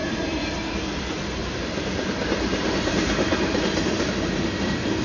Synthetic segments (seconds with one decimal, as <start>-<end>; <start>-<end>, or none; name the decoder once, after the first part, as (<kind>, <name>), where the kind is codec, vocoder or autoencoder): 0.0-0.6 (vocoder, BigVGAN v2); 1.4-4.4